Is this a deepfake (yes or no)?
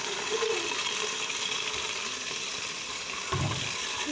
no